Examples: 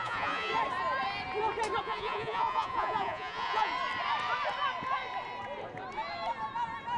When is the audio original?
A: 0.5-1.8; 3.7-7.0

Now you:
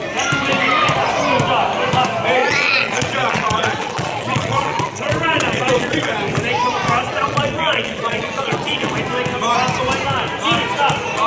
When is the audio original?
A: 0.0-2.4; 6.1-7.1; 8.9-11.3

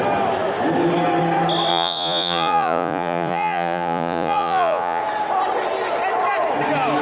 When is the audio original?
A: 0.0-1.7; 5.0-7.0

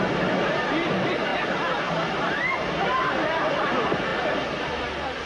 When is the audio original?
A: 0.0-5.3

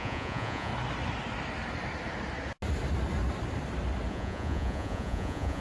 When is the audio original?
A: 0.7-4.1

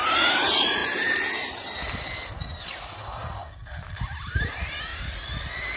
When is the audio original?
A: 0.0-5.8